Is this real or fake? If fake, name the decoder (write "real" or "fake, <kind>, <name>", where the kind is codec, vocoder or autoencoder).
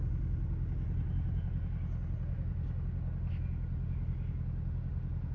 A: real